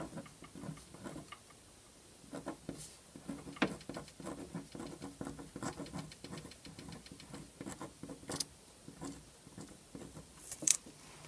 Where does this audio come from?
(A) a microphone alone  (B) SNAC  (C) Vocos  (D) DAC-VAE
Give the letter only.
A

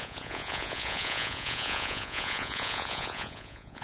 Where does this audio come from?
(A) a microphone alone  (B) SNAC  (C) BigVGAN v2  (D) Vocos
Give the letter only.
D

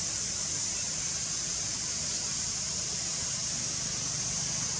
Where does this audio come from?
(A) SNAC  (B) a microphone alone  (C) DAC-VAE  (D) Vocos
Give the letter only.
B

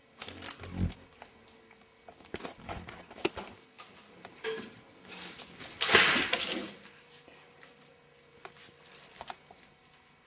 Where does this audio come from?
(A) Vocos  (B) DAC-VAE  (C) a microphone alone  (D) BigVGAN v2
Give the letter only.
C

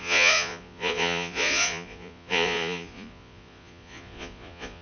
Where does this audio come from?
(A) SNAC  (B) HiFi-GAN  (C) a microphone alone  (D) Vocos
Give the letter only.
D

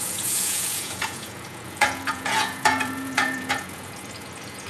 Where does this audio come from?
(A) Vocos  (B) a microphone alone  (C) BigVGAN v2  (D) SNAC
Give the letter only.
A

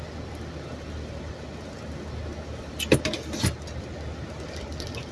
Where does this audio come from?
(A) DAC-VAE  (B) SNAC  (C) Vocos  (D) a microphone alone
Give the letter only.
D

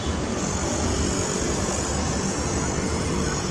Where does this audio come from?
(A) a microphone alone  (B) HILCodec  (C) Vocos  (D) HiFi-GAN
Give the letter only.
C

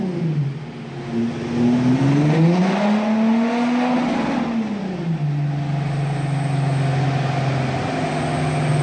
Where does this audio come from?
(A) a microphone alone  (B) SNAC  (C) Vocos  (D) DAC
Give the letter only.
A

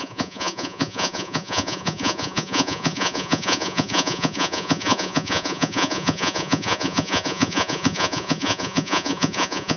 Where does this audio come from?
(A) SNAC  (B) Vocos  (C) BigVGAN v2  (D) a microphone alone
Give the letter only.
B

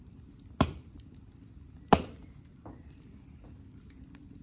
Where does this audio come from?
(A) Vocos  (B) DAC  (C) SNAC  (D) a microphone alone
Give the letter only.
D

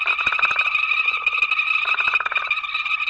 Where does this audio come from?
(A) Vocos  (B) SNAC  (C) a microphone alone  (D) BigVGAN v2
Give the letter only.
C